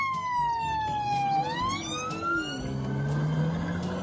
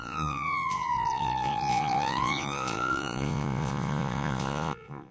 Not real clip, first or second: second